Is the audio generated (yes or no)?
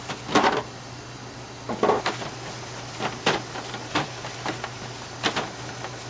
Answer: no